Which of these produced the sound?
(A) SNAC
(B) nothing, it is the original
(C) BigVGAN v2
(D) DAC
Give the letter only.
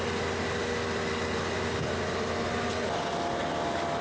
B